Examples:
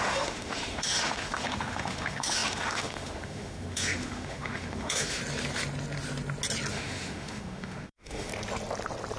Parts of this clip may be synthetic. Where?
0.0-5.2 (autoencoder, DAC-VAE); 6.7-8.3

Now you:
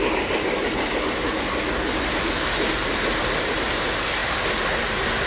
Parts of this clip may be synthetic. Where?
none

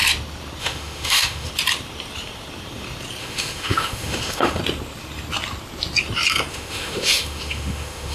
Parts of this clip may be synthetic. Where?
0.6-1.5 (autoencoder, DAC-VAE); 3.2-4.6; 6.5-8.1